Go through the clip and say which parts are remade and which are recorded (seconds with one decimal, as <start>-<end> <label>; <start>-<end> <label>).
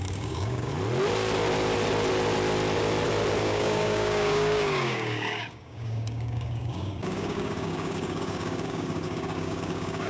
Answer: 0.0-0.7 remade; 0.7-3.4 recorded; 3.4-10.1 remade